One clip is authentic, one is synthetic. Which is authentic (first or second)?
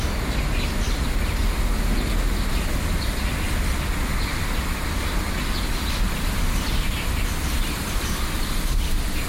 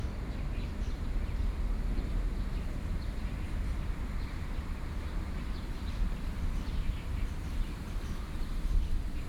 first